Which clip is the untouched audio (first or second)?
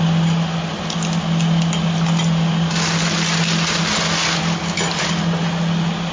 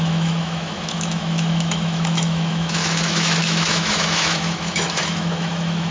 first